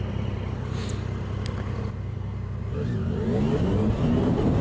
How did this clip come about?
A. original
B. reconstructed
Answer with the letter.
A